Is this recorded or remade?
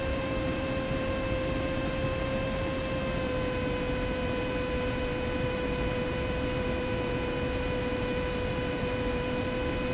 remade